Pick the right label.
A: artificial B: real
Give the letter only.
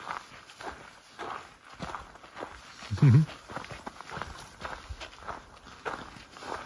B